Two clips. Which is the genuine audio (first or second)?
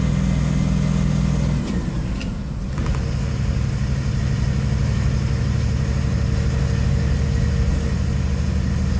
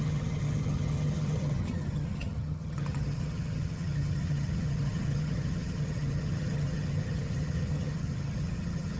first